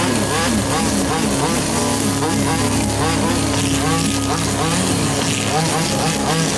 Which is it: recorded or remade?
recorded